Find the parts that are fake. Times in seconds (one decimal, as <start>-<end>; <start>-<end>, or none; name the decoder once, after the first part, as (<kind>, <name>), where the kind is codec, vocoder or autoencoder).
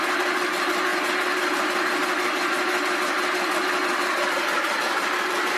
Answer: none